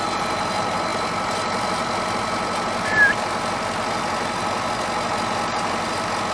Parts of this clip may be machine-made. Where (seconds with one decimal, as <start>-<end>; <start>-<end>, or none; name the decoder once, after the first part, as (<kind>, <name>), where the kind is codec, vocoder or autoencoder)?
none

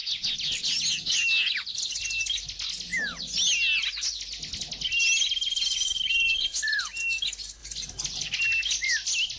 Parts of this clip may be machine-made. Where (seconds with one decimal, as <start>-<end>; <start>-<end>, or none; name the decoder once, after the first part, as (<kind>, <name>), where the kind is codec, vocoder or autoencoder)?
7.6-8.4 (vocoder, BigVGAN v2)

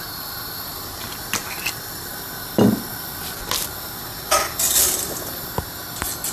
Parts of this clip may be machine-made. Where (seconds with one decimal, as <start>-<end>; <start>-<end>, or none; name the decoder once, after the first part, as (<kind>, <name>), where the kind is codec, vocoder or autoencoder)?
0.7-2.1 (vocoder, BigVGAN v2)

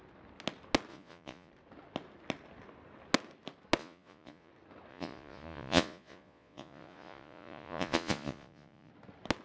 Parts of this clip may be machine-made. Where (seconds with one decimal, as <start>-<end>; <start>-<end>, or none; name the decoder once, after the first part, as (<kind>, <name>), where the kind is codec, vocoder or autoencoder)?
0.9-1.5 (vocoder, Vocos); 3.8-4.5; 4.9-8.9